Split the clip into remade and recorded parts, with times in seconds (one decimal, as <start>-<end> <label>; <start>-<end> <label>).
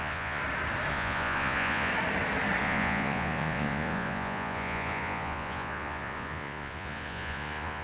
0.0-0.4 remade; 0.4-0.9 recorded; 0.9-1.9 remade; 1.9-2.6 recorded; 2.6-7.8 remade